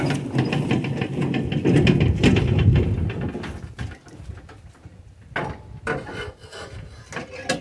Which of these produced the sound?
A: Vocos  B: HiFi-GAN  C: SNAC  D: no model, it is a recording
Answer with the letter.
D